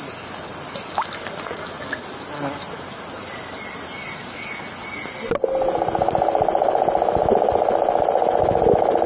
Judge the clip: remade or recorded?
recorded